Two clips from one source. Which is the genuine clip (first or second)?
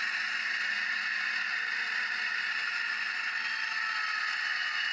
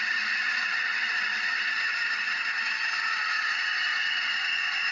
first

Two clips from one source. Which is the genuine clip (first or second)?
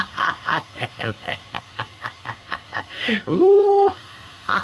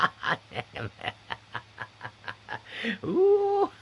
second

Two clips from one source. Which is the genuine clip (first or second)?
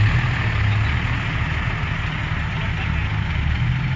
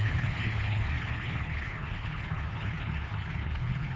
first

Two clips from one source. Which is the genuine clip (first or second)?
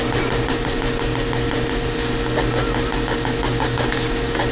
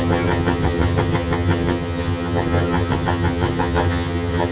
first